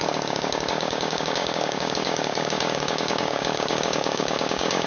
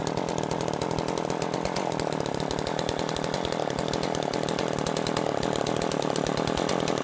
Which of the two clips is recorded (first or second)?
second